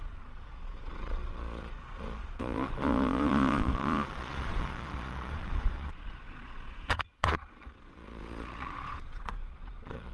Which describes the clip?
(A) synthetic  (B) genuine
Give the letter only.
A